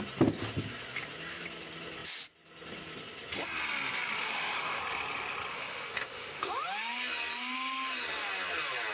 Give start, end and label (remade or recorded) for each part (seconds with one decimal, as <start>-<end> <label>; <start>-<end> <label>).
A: 0.0-4.2 recorded; 4.2-4.8 remade; 4.8-5.5 recorded; 5.5-6.5 remade; 6.5-8.9 recorded